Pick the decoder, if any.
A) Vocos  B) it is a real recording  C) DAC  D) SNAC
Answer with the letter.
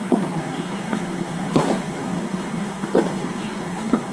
D